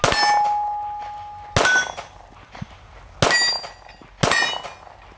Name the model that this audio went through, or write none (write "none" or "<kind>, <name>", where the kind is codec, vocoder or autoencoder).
none